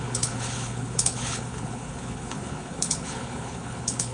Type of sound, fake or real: fake